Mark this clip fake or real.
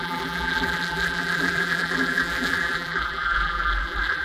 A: fake